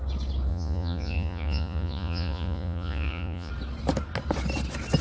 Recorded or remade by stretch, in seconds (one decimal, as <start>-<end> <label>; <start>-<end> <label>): 0.0-0.5 recorded; 0.5-3.5 remade; 3.5-5.0 recorded